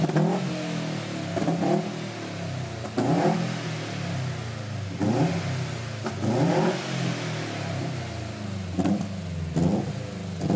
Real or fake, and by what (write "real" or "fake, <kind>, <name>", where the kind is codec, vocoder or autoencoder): real